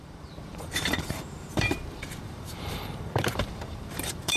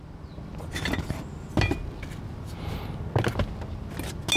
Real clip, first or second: second